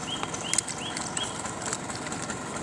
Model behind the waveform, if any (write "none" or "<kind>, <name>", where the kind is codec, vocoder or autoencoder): none